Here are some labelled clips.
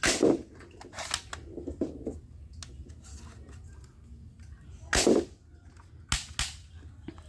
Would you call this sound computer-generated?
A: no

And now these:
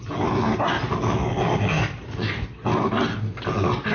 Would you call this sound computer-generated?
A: no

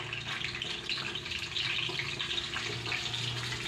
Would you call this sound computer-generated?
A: no